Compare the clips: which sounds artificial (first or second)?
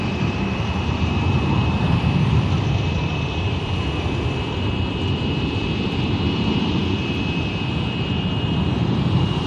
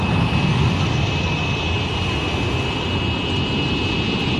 first